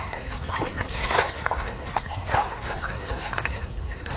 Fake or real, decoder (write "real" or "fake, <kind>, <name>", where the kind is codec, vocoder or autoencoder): fake, codec, SNAC